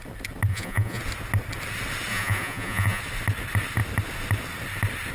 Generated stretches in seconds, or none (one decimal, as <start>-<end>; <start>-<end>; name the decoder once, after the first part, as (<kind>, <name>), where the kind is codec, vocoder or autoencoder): 0.5-1.0 (vocoder, Vocos); 2.1-3.0